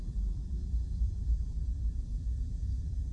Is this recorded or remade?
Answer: remade